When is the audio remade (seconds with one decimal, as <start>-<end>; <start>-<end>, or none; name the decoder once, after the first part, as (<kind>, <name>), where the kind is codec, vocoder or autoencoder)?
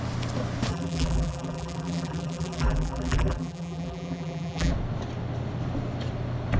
0.7-4.7 (vocoder, BigVGAN v2)